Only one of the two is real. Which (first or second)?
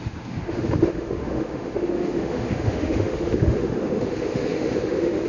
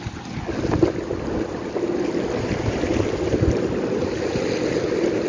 second